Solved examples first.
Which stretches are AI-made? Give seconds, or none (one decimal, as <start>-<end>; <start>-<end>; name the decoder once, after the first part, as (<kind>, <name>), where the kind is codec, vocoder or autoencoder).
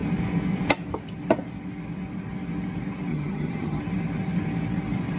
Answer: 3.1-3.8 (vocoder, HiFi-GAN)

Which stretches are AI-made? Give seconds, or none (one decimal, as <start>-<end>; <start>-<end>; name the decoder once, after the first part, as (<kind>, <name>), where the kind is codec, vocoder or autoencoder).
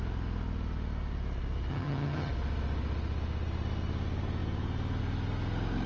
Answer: 1.7-2.3 (vocoder, HiFi-GAN)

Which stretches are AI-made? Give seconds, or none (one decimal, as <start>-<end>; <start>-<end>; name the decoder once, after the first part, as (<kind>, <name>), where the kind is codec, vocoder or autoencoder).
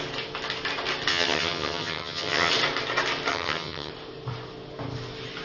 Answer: 1.1-2.5 (vocoder, HiFi-GAN); 3.3-3.9